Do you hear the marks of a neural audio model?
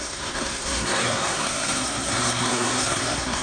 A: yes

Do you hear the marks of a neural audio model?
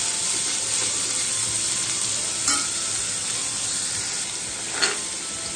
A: no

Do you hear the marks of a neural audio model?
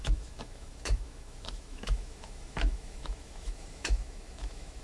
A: yes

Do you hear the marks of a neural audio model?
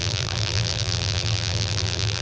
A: yes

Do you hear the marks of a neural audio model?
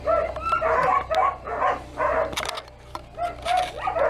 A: no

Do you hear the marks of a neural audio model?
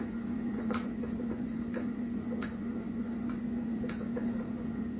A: yes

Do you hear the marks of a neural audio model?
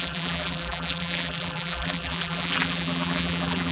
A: yes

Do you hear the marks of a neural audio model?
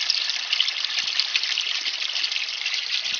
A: no